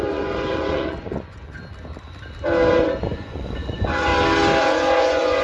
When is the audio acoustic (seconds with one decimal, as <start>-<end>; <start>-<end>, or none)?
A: 1.6-2.7; 4.1-4.6